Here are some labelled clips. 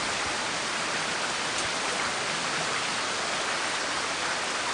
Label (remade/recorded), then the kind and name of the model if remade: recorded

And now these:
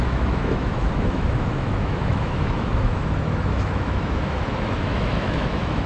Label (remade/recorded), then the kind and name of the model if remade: remade, autoencoder, DAC-VAE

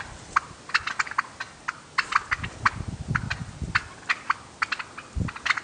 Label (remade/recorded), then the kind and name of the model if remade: recorded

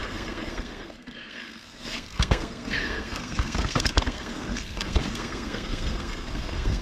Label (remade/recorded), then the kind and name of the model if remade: remade, codec, SNAC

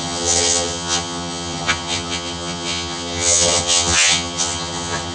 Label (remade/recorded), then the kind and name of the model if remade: remade, vocoder, HiFi-GAN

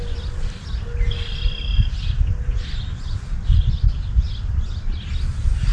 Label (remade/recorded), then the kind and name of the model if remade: recorded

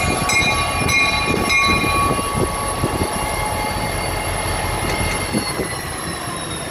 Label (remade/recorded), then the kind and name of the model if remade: recorded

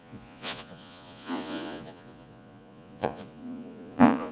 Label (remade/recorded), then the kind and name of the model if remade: remade, vocoder, Vocos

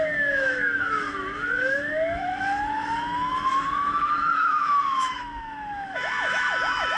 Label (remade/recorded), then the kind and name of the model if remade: remade, autoencoder, DAC-VAE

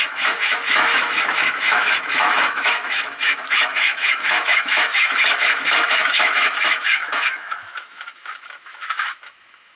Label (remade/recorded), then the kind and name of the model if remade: remade, autoencoder, DAC-VAE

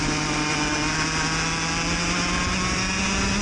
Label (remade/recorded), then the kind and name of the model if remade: recorded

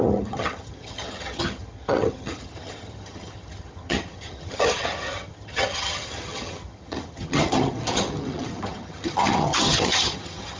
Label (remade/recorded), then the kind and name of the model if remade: remade, vocoder, HiFi-GAN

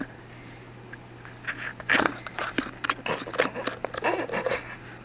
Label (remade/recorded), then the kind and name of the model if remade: recorded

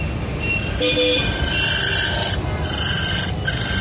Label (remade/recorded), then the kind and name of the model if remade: recorded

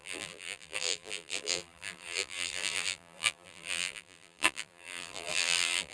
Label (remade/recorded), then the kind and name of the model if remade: remade, vocoder, BigVGAN v2